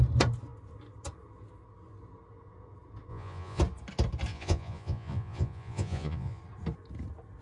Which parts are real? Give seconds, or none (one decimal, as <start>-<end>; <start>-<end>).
0.0-3.1; 3.6-4.3; 6.4-7.4

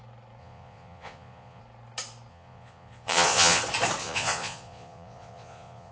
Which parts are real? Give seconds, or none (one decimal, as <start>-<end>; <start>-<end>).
0.0-0.4; 1.6-2.3; 3.6-4.0